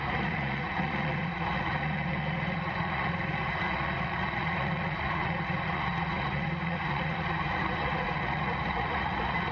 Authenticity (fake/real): fake